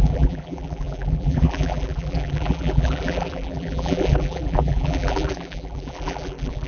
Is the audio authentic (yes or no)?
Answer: no